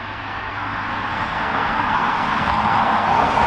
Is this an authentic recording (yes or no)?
no